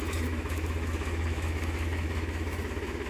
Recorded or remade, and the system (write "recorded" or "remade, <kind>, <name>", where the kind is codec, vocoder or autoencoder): remade, autoencoder, DAC-VAE